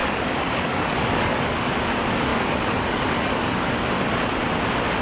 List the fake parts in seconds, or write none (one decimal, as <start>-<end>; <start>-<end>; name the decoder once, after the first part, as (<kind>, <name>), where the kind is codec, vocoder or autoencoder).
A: 0.0-1.7 (codec, DAC); 2.3-3.8